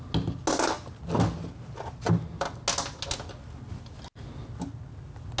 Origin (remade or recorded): recorded